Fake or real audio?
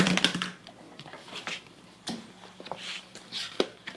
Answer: fake